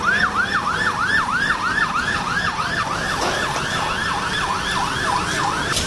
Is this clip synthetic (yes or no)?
no